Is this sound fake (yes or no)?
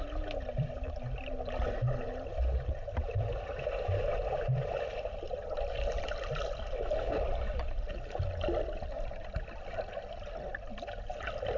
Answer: no